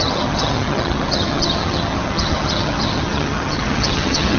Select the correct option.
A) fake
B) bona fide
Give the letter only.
A